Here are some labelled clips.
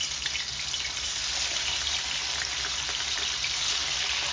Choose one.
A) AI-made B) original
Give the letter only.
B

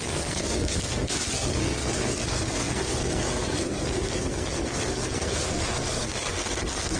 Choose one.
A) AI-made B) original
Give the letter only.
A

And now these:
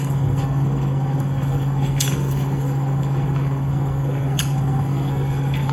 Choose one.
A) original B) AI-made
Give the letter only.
B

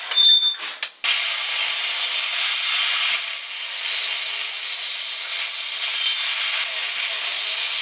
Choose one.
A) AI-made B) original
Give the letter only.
B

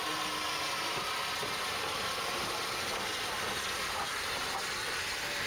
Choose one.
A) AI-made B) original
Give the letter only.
B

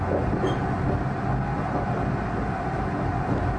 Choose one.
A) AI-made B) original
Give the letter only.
B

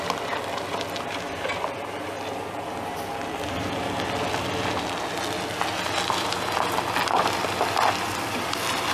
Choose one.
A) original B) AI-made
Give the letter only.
A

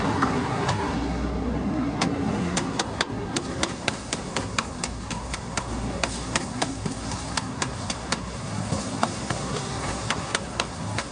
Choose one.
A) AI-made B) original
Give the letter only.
A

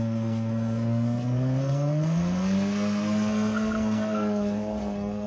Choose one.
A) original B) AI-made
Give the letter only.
B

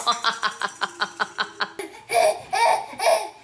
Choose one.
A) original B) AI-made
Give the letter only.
A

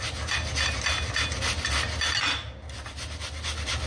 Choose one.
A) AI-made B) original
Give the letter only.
B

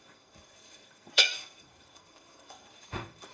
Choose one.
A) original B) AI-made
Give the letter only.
B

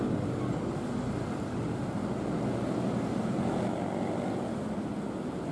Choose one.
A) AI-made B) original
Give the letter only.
B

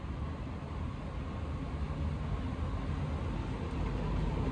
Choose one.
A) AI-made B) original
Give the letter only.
B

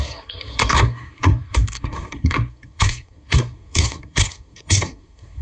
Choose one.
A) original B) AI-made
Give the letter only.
B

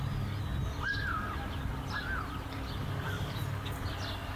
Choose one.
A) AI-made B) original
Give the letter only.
B